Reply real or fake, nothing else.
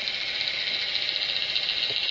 real